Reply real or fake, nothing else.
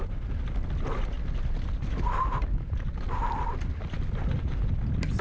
real